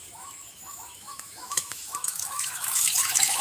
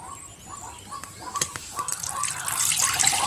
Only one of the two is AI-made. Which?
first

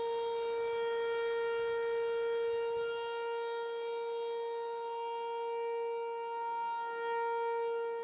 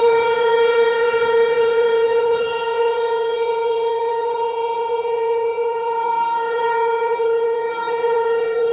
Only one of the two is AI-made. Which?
second